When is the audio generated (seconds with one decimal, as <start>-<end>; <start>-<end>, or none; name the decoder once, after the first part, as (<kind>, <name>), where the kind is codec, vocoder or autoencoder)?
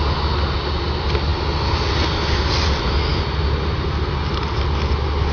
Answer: none